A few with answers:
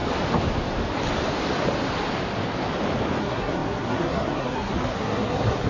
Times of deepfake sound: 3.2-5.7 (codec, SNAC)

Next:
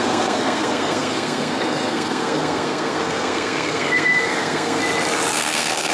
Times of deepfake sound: 0.0-4.8 (codec, SNAC); 5.3-5.9

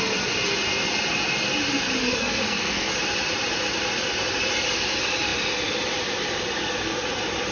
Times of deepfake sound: 2.0-2.9 (codec, SNAC)